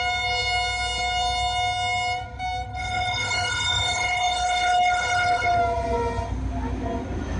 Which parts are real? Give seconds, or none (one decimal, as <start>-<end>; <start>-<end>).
0.0-2.7; 5.6-7.4